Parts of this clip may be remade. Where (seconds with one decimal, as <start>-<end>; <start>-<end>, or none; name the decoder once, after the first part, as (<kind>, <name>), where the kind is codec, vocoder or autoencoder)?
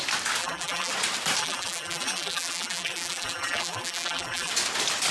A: 0.4-0.9 (vocoder, BigVGAN v2); 1.4-4.5